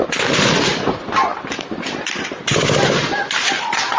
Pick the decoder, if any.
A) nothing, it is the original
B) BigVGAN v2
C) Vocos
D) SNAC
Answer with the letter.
A